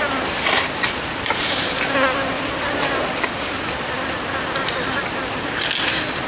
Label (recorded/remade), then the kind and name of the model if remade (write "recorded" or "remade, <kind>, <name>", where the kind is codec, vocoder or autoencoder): recorded